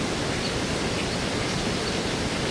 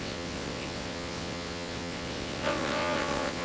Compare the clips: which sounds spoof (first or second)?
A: second